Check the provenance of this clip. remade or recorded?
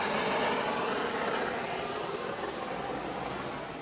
recorded